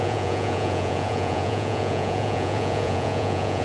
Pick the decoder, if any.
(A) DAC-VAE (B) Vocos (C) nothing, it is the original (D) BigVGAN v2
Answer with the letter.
B